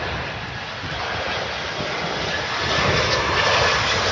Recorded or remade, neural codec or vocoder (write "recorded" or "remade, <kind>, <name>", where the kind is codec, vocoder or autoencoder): recorded